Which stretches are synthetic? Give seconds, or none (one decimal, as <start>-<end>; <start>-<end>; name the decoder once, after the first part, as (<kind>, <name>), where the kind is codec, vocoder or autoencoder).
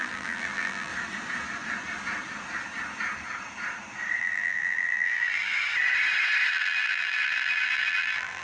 0.0-0.9 (vocoder, BigVGAN v2); 4.2-5.5; 6.5-8.4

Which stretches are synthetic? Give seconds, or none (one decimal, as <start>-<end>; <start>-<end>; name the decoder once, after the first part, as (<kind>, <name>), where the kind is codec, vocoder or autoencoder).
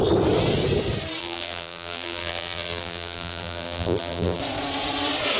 1.2-4.4 (vocoder, BigVGAN v2)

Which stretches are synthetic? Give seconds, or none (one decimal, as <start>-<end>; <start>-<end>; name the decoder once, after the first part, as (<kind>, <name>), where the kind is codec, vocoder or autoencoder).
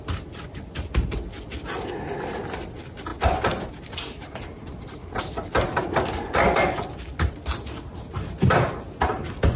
none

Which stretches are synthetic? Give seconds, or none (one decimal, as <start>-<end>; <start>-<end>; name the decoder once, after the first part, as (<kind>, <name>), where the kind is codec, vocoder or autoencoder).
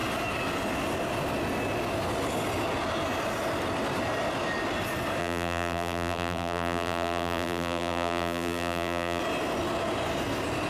5.2-9.2 (vocoder, BigVGAN v2)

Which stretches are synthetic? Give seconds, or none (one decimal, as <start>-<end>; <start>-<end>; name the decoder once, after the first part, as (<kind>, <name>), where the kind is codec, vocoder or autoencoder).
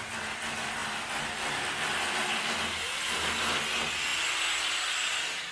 none